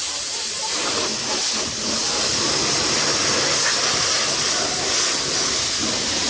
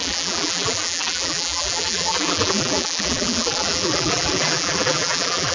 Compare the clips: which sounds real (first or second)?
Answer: first